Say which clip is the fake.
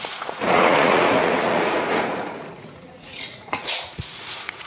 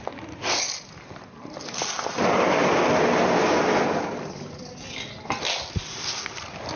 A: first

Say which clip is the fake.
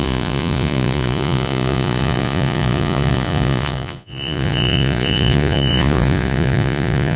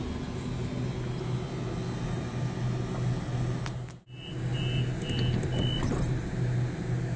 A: first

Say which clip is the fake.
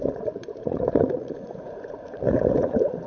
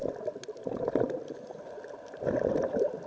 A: first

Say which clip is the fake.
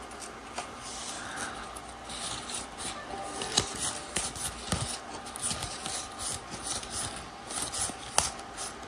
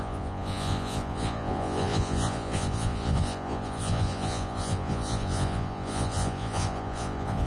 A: second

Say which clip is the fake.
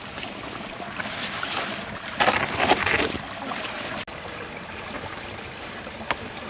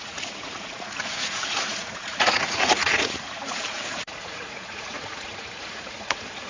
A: second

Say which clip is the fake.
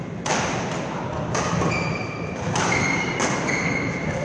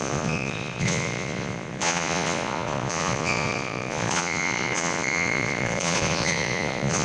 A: second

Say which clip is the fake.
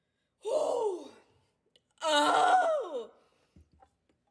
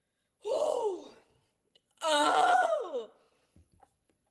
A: second